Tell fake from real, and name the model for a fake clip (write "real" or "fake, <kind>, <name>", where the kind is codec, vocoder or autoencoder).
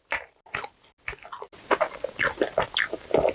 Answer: real